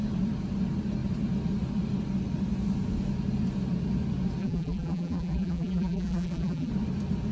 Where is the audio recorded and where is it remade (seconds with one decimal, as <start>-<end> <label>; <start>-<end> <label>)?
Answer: 0.0-4.4 recorded; 4.4-6.7 remade; 6.7-7.3 recorded